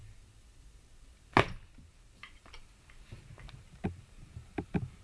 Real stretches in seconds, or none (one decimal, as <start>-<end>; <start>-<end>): 0.0-1.8